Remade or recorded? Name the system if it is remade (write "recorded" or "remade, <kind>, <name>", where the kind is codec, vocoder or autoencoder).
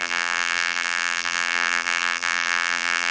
remade, vocoder, BigVGAN v2